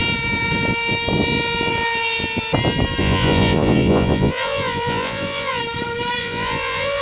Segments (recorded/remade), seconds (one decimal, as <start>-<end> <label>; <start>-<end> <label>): 0.0-3.0 recorded; 3.0-5.6 remade; 5.6-6.2 recorded; 6.2-7.0 remade

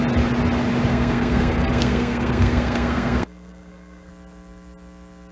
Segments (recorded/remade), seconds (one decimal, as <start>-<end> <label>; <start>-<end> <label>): 0.0-0.9 recorded; 0.9-4.1 remade; 4.1-5.3 recorded

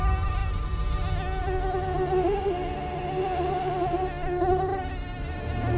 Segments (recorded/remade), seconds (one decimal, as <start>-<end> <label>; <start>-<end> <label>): 0.0-5.8 recorded